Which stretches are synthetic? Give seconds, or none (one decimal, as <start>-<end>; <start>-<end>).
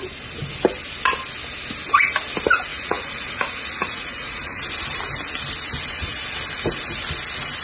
2.7-4.6